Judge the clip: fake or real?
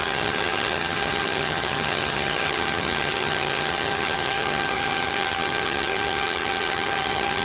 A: fake